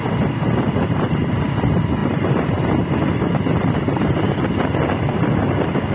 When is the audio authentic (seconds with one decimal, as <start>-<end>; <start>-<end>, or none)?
0.0-5.9